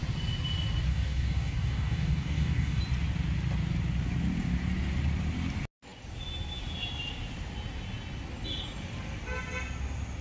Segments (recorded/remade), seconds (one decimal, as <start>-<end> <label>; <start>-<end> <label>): 0.0-0.9 recorded; 0.9-2.8 remade; 2.8-10.2 recorded